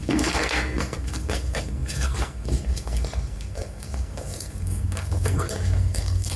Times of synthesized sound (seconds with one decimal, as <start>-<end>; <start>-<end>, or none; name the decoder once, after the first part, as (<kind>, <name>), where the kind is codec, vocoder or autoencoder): 0.0-6.4 (codec, SNAC)